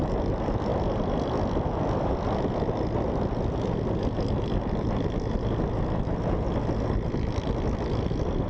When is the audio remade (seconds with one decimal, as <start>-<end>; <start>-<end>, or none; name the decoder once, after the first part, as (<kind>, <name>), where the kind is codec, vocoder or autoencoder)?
none

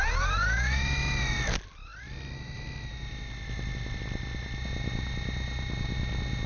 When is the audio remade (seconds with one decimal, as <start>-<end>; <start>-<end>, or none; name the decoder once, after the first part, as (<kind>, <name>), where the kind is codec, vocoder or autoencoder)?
none

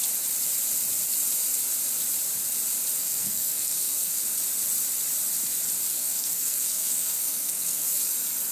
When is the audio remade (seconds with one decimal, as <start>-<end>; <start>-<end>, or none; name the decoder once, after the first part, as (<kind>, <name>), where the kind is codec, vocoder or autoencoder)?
3.0-4.2 (codec, SNAC); 5.9-8.0

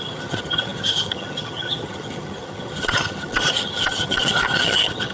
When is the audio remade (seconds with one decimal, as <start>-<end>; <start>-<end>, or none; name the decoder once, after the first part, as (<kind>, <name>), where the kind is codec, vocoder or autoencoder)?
0.0-5.1 (vocoder, HiFi-GAN)

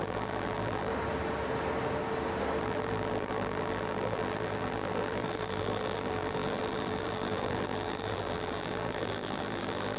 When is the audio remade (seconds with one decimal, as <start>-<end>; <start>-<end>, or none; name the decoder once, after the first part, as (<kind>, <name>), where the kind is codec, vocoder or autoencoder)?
0.0-0.9 (vocoder, BigVGAN v2); 2.6-10.0